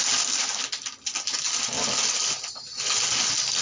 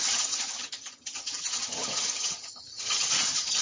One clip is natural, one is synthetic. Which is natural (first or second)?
first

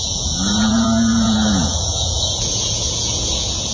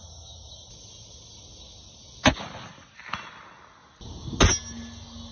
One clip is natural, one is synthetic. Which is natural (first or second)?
second